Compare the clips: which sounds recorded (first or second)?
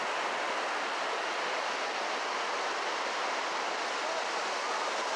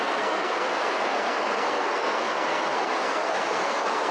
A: first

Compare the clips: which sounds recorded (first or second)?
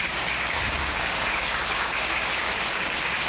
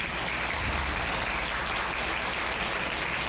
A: second